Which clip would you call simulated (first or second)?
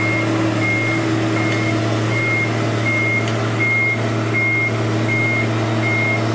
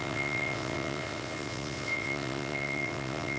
second